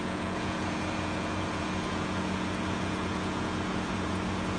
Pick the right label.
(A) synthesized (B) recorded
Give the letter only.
A